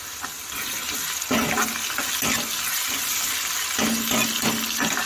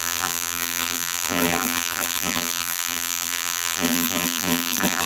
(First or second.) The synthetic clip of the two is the second